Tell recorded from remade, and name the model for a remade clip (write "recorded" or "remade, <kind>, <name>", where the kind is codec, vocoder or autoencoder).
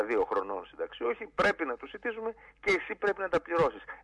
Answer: recorded